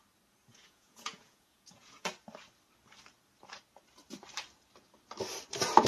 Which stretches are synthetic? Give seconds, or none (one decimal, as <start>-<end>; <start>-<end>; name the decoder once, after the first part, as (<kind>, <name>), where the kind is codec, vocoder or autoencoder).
0.5-2.1 (vocoder, Vocos)